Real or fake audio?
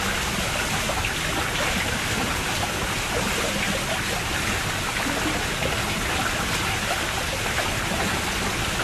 real